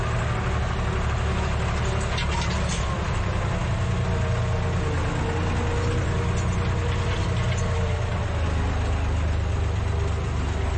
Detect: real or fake real